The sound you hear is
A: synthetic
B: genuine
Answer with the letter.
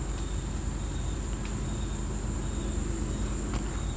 B